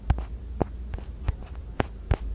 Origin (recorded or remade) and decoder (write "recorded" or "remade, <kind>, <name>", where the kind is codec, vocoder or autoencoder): recorded